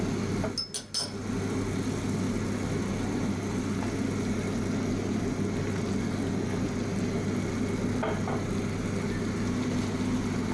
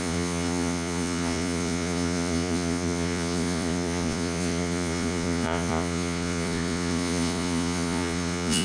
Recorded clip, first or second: first